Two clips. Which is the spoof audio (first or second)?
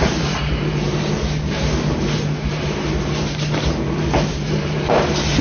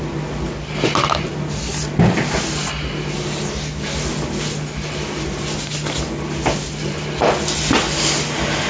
first